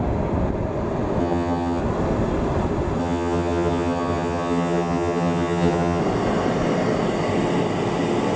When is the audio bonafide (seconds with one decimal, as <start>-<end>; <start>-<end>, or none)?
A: 0.0-1.2; 1.8-3.0; 6.0-8.4